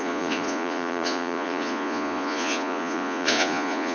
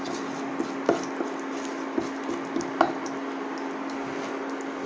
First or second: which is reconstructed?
first